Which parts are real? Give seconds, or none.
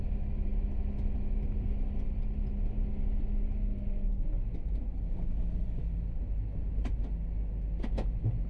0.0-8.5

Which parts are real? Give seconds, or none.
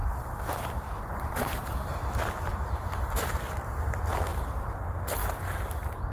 2.1-2.5; 3.3-4.3; 4.8-5.2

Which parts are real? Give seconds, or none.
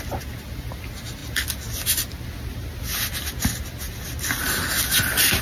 0.0-5.4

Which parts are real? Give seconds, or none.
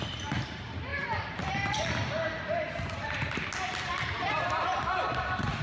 0.0-5.6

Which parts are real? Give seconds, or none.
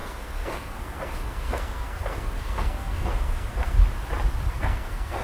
3.8-4.5